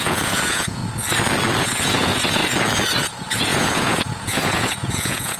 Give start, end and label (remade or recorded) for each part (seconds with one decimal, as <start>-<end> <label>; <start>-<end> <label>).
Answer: 0.0-0.8 remade; 0.8-1.6 recorded; 1.6-2.4 remade; 2.4-3.0 recorded; 3.0-5.4 remade